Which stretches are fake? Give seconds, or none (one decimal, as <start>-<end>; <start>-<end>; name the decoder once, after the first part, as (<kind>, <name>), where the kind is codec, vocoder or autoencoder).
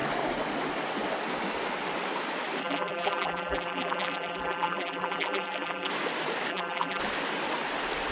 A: 2.6-5.9 (vocoder, BigVGAN v2); 6.5-7.0